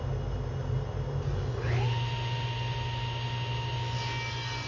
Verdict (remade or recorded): recorded